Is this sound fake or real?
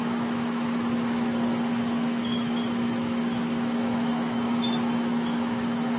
fake